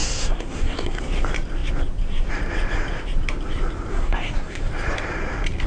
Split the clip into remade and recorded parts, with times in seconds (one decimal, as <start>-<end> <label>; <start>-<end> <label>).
0.0-1.0 remade; 1.0-3.9 recorded; 3.9-4.7 remade; 4.7-5.7 recorded